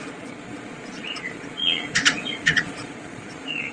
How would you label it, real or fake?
fake